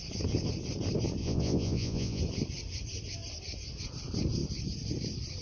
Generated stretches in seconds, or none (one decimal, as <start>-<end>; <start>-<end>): 1.2-2.2